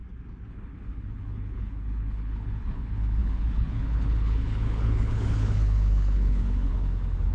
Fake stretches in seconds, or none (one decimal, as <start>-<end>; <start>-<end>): 0.5-7.3